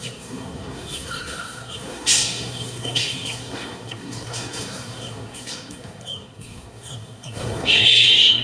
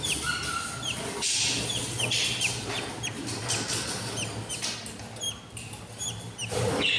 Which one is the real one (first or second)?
second